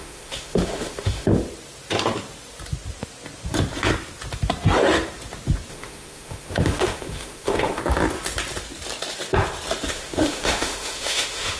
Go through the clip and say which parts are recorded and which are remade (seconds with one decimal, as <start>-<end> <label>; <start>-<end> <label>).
0.0-1.3 remade; 1.3-5.7 recorded; 5.7-7.8 remade; 7.8-9.9 recorded; 9.9-11.6 remade